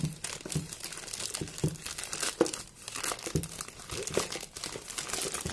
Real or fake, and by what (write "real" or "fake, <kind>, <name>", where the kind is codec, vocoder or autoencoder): real